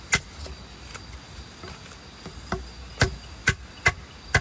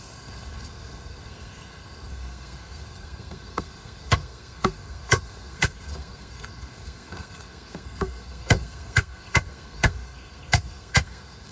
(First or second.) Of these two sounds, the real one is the first